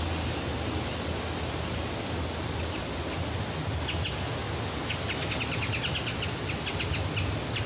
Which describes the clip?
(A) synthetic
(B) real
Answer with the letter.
B